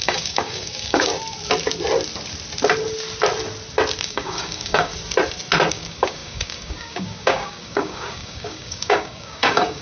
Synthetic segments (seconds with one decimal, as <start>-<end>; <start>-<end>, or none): 0.0-1.1; 4.0-4.9; 5.7-9.8